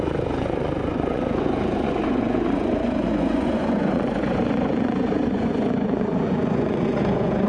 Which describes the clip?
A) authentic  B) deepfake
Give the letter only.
B